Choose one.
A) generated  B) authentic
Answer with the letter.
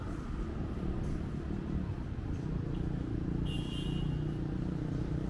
B